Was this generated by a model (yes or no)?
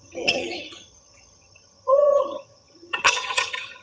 yes